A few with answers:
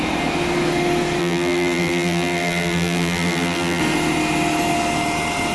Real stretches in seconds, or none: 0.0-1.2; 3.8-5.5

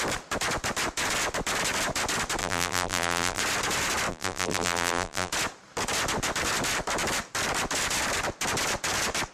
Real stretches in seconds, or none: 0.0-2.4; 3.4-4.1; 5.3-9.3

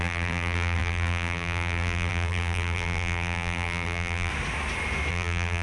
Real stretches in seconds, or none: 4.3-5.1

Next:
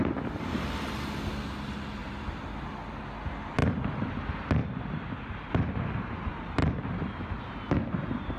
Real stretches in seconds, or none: 0.0-2.0; 2.7-3.6; 4.1-4.6; 5.5-6.6; 7.4-8.4

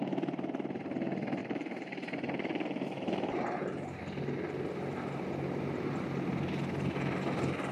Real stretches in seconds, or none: 0.0-1.4; 4.0-7.7

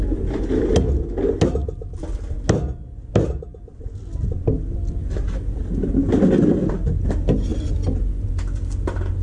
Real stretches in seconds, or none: 0.0-9.2

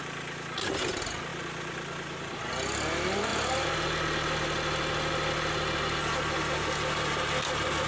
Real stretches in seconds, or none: 0.0-1.3; 2.5-7.9

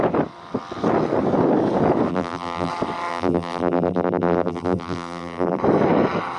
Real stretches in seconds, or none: 0.0-2.1; 2.7-3.1; 5.6-6.4